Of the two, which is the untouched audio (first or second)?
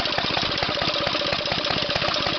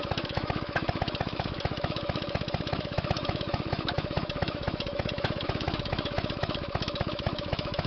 first